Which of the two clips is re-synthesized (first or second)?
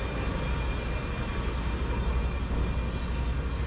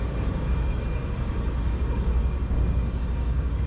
second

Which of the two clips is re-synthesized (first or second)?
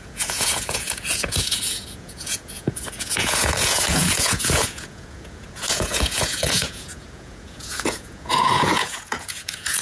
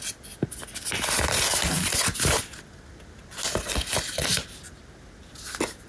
first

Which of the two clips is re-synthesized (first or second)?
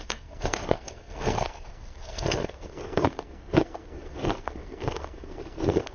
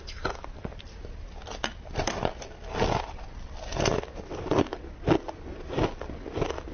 first